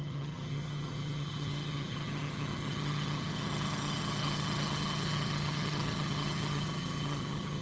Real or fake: fake